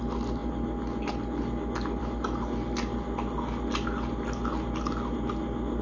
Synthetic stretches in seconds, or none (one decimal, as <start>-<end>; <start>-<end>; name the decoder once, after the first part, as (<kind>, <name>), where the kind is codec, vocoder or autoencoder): none